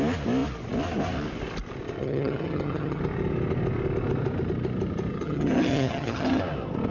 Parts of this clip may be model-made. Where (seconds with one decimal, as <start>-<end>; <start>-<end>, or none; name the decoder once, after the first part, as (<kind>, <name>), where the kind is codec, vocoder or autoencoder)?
2.0-3.0 (vocoder, HiFi-GAN); 5.1-6.4